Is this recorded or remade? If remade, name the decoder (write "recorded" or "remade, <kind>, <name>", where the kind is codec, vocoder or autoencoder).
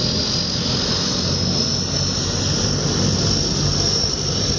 recorded